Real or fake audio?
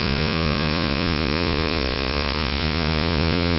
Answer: fake